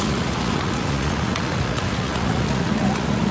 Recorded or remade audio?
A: remade